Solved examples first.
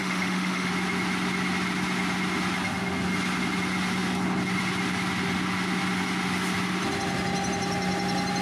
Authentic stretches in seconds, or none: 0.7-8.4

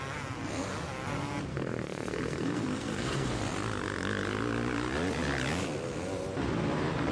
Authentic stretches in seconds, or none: 0.0-1.5; 3.3-7.1

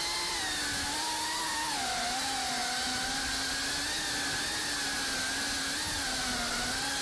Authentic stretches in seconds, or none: 0.0-7.0

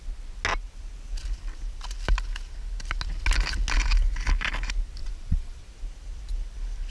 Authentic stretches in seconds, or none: 0.0-5.0; 5.6-6.9

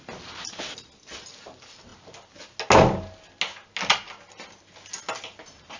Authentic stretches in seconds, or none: 0.0-5.8

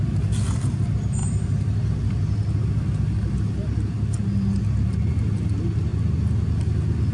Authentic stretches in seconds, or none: 0.0-7.1